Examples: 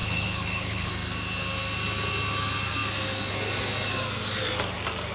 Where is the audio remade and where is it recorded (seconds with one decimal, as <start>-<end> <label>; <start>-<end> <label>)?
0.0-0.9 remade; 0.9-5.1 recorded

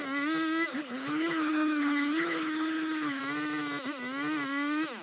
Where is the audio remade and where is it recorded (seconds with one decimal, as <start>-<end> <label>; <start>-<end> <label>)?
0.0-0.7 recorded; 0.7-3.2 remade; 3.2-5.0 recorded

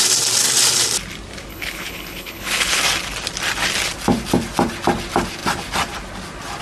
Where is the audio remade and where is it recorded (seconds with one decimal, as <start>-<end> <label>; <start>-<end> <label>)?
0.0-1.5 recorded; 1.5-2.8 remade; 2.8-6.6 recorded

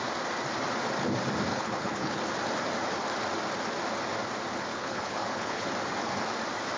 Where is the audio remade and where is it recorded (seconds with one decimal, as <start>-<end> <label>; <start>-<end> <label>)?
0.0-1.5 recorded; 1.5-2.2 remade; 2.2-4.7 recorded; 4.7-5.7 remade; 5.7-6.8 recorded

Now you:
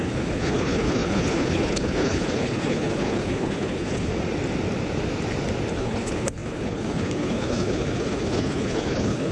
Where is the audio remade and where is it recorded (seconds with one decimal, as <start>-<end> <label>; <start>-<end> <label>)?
0.0-4.1 remade; 4.1-5.7 recorded; 5.7-9.3 remade

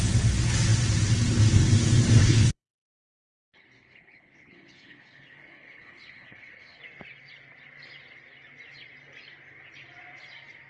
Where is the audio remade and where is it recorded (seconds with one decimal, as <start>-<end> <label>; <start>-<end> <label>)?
0.0-2.2 recorded; 2.2-6.8 remade; 6.8-10.7 recorded